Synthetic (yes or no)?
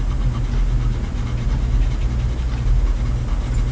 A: no